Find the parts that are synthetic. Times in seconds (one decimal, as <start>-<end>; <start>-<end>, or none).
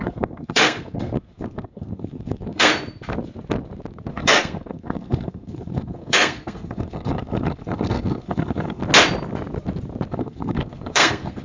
0.0-2.7; 4.1-8.8; 10.1-11.4